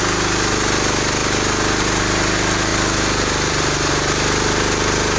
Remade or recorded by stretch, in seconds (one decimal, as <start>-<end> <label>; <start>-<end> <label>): 0.0-2.7 recorded; 2.7-3.9 remade; 3.9-5.2 recorded